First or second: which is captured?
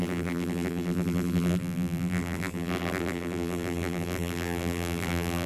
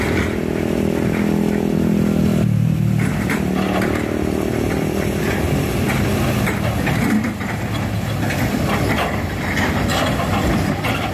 second